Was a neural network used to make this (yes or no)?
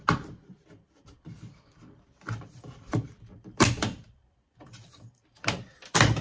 yes